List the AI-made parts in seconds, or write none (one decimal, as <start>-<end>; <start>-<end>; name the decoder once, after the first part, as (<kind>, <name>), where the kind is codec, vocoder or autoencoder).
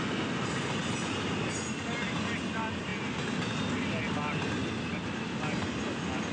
none